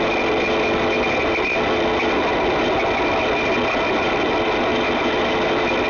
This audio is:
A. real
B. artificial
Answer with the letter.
A